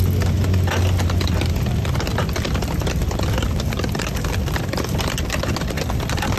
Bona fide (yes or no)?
yes